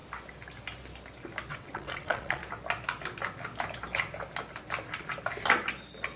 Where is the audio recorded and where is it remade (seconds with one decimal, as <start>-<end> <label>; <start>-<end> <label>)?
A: 0.0-1.5 recorded; 1.5-2.4 remade; 2.4-6.2 recorded